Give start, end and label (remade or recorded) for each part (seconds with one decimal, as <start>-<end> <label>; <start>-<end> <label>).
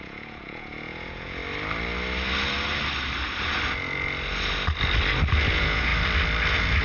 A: 0.0-1.4 remade; 1.4-5.5 recorded; 5.5-5.9 remade; 5.9-6.8 recorded